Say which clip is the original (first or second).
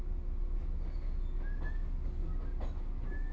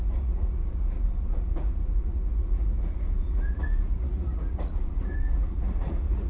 first